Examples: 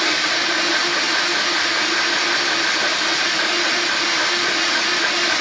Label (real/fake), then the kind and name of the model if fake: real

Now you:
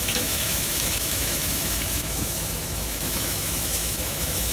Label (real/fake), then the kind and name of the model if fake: fake, autoencoder, DAC-VAE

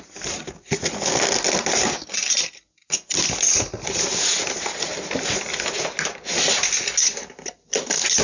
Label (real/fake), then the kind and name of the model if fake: real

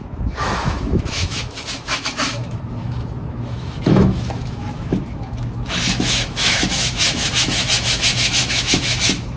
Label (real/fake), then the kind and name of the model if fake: fake, autoencoder, DAC-VAE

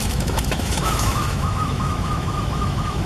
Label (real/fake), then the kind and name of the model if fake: fake, autoencoder, DAC-VAE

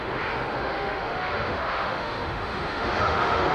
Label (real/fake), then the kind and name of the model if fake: fake, autoencoder, DAC-VAE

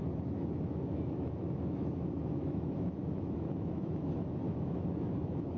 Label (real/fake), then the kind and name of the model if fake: fake, autoencoder, DAC-VAE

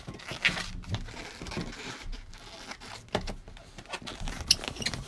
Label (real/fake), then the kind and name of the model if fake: real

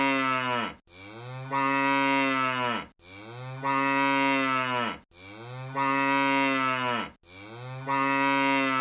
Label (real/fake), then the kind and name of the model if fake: real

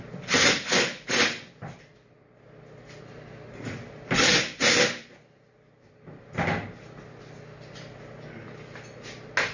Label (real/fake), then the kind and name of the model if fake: real